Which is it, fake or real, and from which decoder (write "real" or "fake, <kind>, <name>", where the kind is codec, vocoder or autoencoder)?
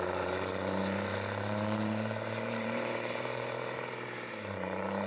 fake, vocoder, BigVGAN v2